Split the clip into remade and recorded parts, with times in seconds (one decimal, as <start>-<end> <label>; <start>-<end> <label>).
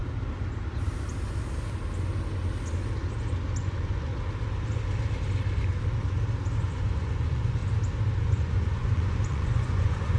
0.0-3.6 recorded; 3.6-4.1 remade; 4.1-6.7 recorded; 6.7-7.6 remade; 7.6-8.2 recorded; 8.2-10.2 remade